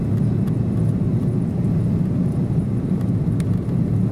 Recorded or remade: recorded